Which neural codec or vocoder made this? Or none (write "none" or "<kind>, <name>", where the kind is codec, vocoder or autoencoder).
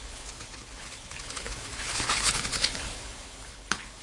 codec, HILCodec